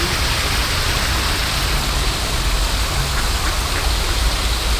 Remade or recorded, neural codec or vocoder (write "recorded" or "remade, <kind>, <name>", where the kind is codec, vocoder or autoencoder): recorded